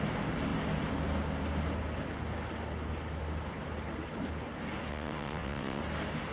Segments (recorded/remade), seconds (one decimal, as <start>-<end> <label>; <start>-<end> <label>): 0.0-4.9 recorded; 4.9-5.8 remade; 5.8-6.3 recorded